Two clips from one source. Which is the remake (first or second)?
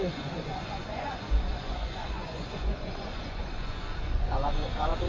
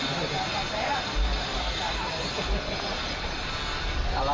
first